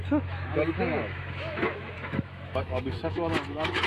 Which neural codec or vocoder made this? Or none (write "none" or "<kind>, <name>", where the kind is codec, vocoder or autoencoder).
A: autoencoder, DAC-VAE